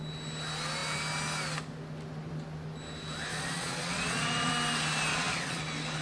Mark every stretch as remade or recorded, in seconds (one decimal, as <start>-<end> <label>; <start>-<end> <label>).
0.0-3.3 recorded; 3.3-4.5 remade; 4.5-5.1 recorded; 5.1-5.6 remade; 5.6-6.0 recorded